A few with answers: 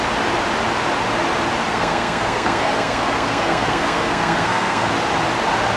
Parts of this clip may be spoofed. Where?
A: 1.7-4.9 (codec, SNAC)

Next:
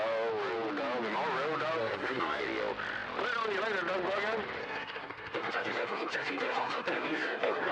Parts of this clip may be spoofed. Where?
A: 1.8-2.4 (codec, SNAC); 4.6-7.7

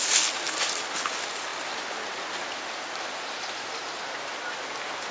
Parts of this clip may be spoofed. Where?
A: none

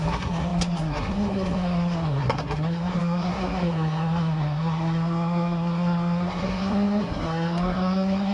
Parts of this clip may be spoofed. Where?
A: 0.0-8.3 (codec, SNAC)

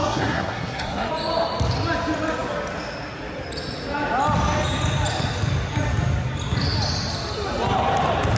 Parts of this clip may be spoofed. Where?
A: 0.0-1.1 (codec, SNAC)

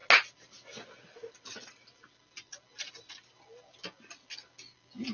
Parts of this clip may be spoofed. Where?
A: none

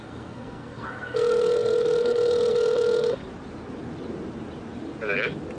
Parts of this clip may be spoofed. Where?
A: 0.0-3.2 (codec, SNAC)

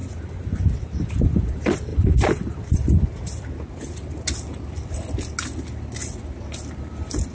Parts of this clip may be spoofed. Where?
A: none